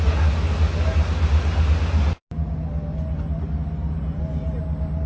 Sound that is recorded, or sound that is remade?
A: recorded